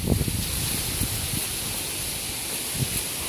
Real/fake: real